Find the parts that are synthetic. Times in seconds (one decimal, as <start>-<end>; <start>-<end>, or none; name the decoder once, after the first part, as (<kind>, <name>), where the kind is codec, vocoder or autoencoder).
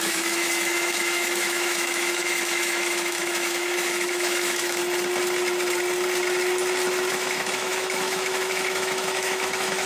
0.0-4.8 (autoencoder, DAC-VAE); 7.1-9.9